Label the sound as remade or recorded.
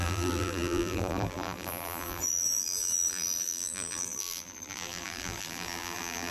remade